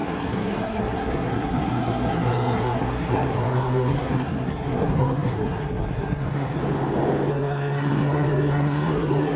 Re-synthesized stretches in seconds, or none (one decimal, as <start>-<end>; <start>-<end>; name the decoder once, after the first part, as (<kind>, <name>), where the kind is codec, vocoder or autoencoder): 0.0-6.6 (codec, SNAC); 7.3-9.4